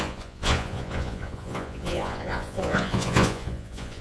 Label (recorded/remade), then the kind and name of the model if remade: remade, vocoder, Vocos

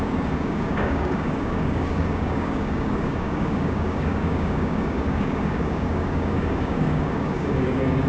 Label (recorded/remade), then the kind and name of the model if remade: remade, codec, DAC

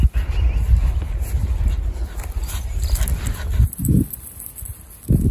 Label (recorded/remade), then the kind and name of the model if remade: recorded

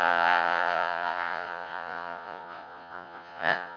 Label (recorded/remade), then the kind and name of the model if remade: remade, vocoder, Vocos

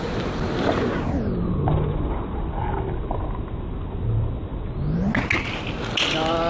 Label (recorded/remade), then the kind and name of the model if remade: recorded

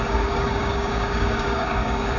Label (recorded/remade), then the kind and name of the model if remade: remade, codec, DAC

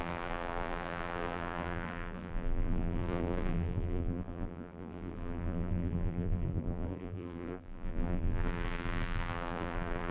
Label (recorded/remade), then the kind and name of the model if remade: remade, vocoder, BigVGAN v2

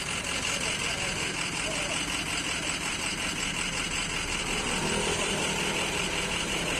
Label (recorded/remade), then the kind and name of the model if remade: recorded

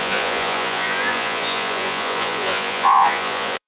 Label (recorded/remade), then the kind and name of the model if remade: remade, vocoder, Vocos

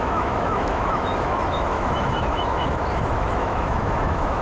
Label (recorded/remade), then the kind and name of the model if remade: remade, autoencoder, DAC-VAE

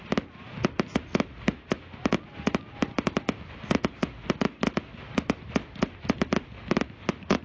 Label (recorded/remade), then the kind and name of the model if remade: recorded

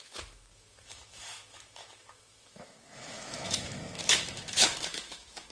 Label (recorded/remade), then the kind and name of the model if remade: remade, autoencoder, DAC-VAE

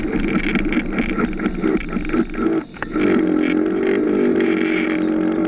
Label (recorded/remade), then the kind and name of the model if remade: recorded